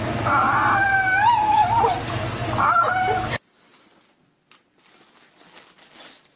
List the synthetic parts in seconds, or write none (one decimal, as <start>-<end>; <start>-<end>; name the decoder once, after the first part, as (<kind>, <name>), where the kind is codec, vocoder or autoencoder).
none

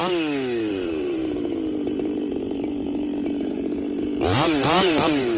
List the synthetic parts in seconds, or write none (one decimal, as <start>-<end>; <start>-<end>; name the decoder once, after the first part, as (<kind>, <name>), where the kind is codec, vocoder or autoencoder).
0.7-5.4 (vocoder, BigVGAN v2)